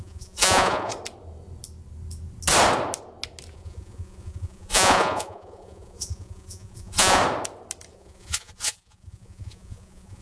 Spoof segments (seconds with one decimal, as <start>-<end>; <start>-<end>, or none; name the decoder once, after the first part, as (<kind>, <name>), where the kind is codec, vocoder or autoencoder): 0.0-0.9 (vocoder, Vocos); 3.5-7.2; 7.9-10.2